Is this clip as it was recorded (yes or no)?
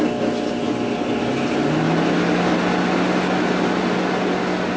yes